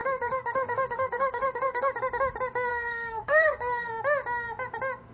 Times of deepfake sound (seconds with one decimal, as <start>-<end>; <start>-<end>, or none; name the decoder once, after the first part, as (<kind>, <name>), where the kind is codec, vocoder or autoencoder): 0.0-1.9 (codec, SNAC); 2.7-3.9